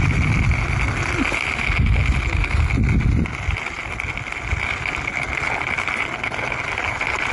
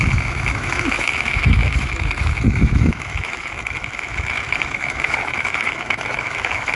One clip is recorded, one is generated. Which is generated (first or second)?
second